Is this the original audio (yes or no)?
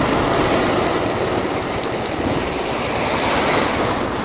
yes